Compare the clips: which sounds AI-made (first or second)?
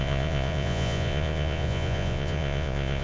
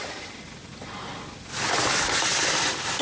first